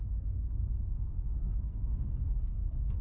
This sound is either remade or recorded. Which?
remade